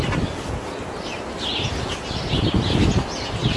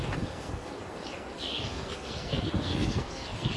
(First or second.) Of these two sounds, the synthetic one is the second